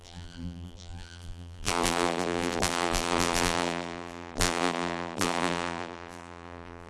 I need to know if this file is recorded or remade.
remade